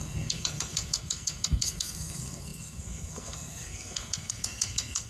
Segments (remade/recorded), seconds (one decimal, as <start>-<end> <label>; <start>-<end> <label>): 0.0-5.1 remade